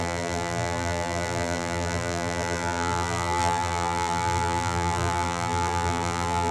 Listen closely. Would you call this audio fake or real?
fake